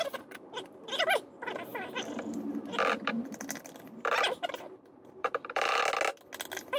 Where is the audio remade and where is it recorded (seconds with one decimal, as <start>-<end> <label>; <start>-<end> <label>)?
0.0-1.7 recorded; 1.7-5.8 remade; 5.8-6.8 recorded